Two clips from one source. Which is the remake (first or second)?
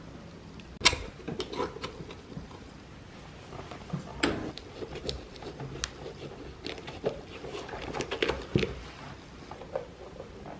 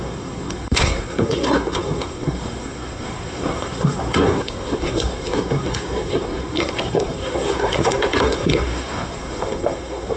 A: second